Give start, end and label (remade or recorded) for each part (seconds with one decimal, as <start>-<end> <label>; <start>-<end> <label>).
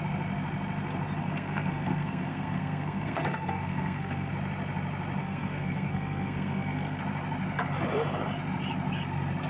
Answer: 0.0-1.2 recorded; 1.2-4.3 remade; 4.3-5.2 recorded; 5.2-7.0 remade; 7.0-9.5 recorded